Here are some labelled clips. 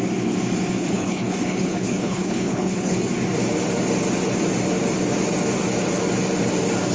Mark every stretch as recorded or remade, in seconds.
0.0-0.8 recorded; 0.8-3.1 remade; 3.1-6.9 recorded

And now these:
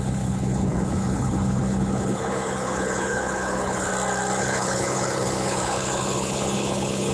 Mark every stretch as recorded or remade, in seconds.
0.0-3.9 remade; 3.9-4.4 recorded; 4.4-7.1 remade

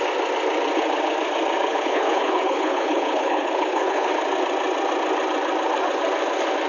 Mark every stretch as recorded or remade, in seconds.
0.0-1.7 recorded; 1.7-4.1 remade; 4.1-6.7 recorded